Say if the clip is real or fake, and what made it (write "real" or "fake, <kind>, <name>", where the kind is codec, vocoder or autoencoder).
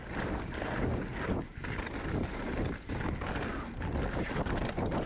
real